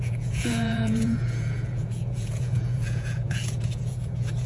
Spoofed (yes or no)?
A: yes